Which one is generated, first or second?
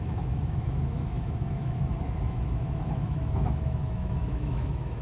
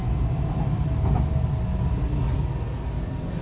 first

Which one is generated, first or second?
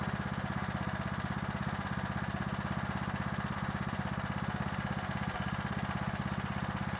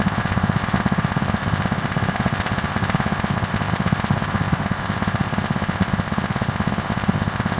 second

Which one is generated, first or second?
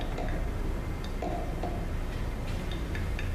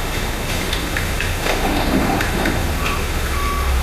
second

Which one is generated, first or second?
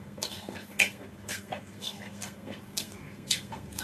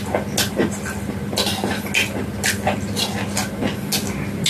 first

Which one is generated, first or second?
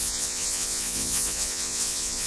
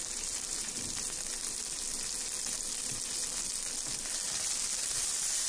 first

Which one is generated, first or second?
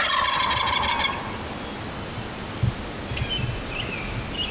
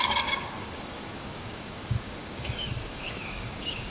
second